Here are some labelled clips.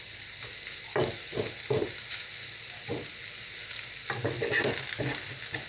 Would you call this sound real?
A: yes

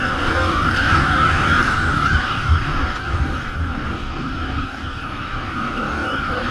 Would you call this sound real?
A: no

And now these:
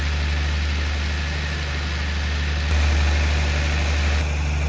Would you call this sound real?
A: yes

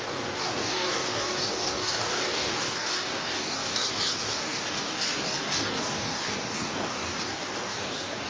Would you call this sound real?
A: no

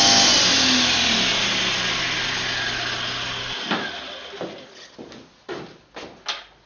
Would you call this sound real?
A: yes